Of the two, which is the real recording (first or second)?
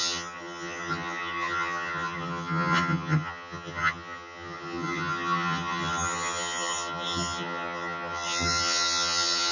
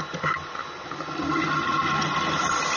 second